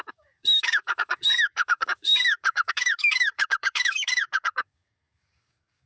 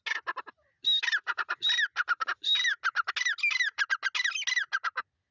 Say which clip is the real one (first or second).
second